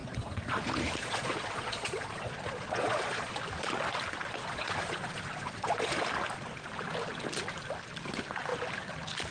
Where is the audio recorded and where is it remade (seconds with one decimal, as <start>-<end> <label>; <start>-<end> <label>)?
0.0-0.6 remade; 0.6-1.0 recorded; 1.0-3.3 remade; 3.3-4.4 recorded; 4.4-6.0 remade; 6.0-9.3 recorded